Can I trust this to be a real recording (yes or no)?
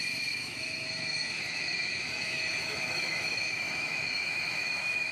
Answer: no